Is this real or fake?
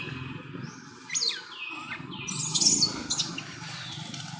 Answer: real